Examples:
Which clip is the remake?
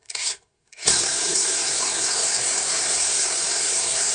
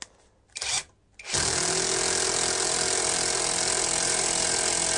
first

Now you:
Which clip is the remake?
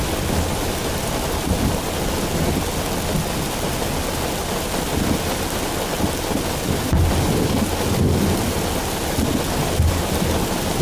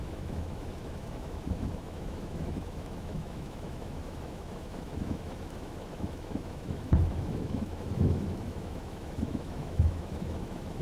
second